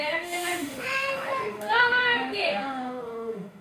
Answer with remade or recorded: remade